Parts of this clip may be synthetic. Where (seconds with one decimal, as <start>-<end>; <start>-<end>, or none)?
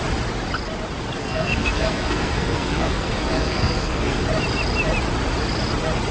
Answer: 1.2-4.2